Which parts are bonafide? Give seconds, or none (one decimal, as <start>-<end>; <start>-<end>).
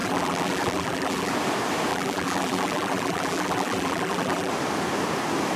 1.3-1.9; 4.5-5.6